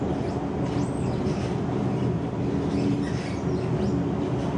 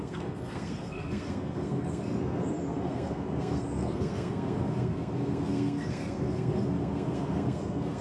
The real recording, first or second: first